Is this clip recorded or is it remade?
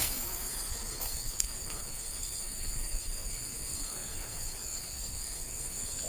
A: remade